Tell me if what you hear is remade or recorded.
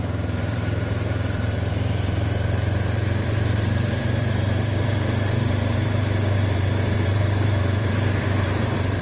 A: remade